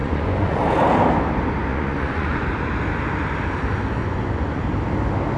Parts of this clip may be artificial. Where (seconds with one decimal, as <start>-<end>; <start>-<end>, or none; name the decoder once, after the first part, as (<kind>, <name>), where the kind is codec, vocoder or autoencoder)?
0.0-0.6 (vocoder, Vocos); 1.7-2.4; 4.0-4.6